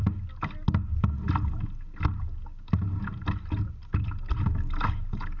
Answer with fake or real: real